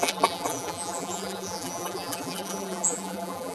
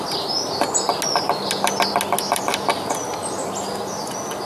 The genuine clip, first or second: second